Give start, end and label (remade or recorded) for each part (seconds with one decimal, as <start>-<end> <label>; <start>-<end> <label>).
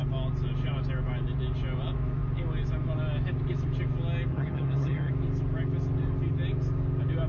0.0-4.3 recorded; 4.3-5.1 remade; 5.1-7.3 recorded